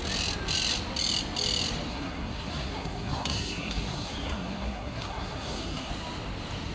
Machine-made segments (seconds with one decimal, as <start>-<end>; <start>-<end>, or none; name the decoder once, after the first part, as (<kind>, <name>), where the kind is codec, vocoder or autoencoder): 1.9-5.9 (codec, SNAC)

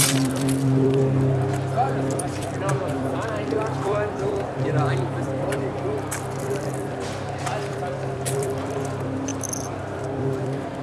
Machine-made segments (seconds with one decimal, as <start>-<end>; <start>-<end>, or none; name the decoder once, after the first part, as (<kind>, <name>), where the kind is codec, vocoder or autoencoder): 0.0-10.8 (vocoder, BigVGAN v2)

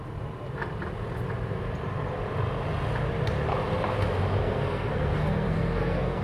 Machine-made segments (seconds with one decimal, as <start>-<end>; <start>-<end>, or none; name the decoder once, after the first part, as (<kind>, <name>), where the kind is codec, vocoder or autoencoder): 4.4-6.2 (codec, SNAC)

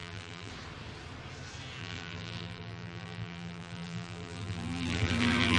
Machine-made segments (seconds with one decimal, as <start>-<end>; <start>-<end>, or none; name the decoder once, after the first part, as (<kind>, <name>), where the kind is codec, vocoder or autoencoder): 0.0-0.5 (vocoder, BigVGAN v2); 1.8-5.6

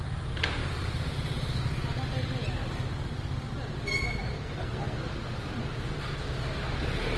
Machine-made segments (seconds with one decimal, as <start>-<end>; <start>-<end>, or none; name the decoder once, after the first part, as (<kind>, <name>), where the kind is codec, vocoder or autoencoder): 4.2-5.1 (codec, SNAC)

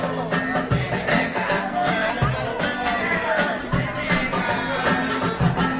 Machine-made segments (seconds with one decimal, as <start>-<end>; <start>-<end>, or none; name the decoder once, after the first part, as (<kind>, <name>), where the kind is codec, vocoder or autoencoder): 1.1-2.1 (codec, SNAC); 2.5-3.6

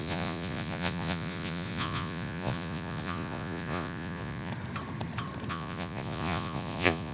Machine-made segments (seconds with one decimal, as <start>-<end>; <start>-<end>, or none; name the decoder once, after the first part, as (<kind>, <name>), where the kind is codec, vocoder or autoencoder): 0.0-4.5 (vocoder, Vocos); 5.5-7.1

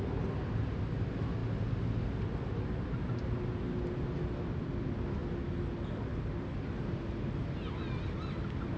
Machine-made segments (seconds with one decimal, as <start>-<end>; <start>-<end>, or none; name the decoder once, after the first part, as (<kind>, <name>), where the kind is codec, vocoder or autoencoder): none